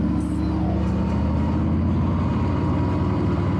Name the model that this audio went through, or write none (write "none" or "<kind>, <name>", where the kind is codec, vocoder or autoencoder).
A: none